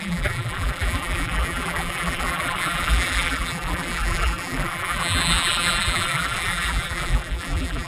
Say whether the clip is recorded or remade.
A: remade